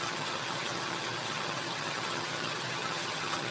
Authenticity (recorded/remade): remade